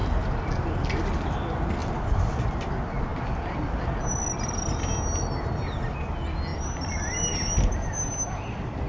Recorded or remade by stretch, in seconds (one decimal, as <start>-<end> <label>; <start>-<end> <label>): 0.0-6.5 recorded; 6.5-8.0 remade; 8.0-8.9 recorded